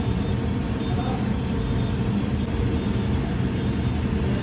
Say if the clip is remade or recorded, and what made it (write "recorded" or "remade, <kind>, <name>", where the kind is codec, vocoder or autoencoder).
recorded